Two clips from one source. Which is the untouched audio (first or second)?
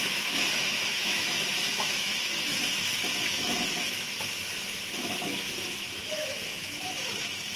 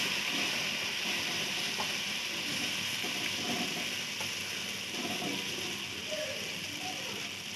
second